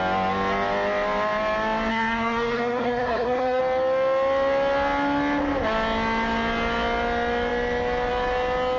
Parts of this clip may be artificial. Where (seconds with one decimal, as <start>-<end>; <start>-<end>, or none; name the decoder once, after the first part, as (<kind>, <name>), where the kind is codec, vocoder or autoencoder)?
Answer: 1.9-3.6 (codec, SNAC)

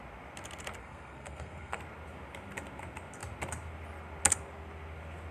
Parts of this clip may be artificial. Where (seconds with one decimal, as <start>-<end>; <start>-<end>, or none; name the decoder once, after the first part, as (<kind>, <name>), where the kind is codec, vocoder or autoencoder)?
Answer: 0.8-1.8 (codec, SNAC)

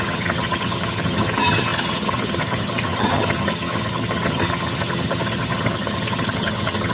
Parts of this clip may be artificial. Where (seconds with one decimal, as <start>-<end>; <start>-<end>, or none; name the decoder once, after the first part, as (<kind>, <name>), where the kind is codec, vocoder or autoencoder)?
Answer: 0.0-6.9 (vocoder, HiFi-GAN)

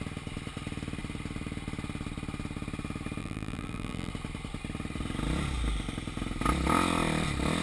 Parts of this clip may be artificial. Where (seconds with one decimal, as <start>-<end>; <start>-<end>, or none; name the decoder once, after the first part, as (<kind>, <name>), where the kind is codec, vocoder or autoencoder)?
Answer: 3.2-4.1 (vocoder, BigVGAN v2)

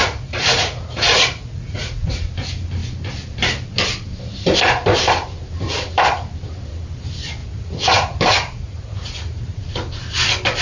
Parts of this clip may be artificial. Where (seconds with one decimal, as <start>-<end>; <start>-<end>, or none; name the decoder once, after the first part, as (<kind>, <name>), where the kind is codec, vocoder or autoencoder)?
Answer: 0.0-2.1 (vocoder, Vocos); 7.4-9.6

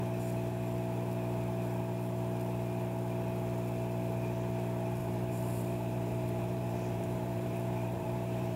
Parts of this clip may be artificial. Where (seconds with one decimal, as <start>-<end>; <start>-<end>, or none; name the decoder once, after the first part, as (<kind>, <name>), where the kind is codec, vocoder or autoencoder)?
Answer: 5.0-8.6 (vocoder, BigVGAN v2)

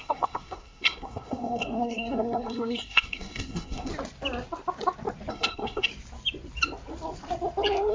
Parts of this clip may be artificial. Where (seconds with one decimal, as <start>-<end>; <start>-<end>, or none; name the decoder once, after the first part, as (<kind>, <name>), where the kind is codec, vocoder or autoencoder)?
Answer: 0.0-3.9 (codec, SNAC); 5.3-5.9